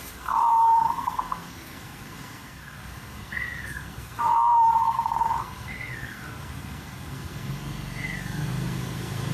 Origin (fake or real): fake